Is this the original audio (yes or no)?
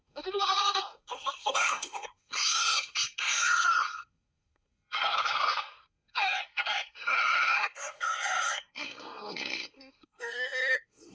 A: no